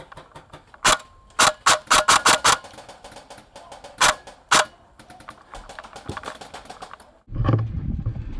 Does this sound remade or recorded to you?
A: recorded